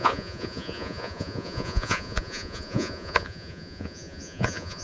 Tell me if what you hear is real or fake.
fake